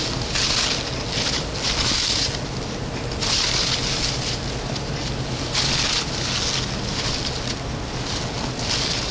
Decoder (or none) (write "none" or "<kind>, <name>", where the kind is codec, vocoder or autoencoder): none